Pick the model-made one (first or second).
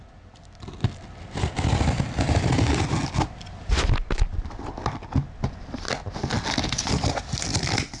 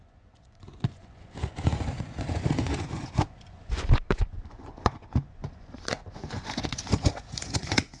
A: second